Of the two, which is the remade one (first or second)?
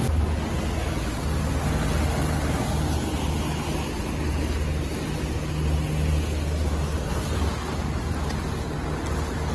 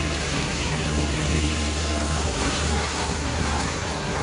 second